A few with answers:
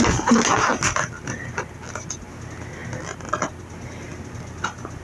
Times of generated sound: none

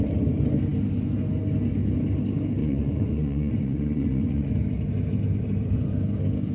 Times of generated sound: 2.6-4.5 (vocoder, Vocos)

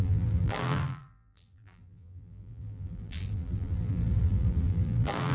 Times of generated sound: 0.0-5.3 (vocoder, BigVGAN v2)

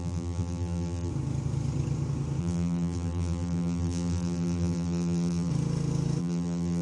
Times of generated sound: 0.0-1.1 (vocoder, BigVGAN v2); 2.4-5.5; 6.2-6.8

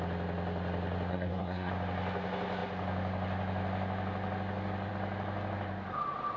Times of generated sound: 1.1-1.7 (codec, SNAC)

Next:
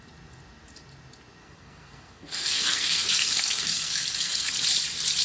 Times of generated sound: 1.4-4.5 (codec, SNAC)